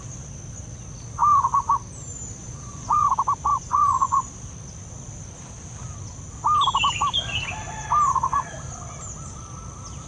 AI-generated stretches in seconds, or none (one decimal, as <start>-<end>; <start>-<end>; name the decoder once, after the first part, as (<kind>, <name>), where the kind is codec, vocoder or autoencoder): 2.4-3.1 (vocoder, Vocos); 3.5-4.3